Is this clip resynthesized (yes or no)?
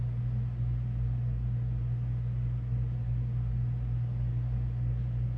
no